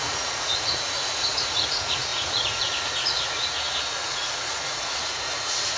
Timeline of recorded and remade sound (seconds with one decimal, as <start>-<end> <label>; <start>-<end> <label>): 0.0-5.8 remade